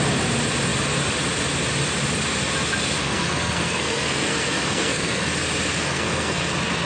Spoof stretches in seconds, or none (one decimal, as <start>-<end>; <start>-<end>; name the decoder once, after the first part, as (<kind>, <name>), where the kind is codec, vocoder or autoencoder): 3.0-5.3 (codec, SNAC); 5.7-6.5